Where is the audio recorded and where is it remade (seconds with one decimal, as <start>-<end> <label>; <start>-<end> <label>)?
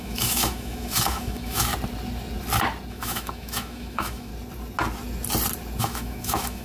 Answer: 0.0-1.7 remade; 1.7-2.9 recorded; 2.9-4.3 remade; 4.3-5.8 recorded; 5.8-6.6 remade